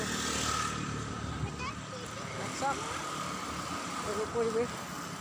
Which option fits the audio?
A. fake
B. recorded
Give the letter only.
B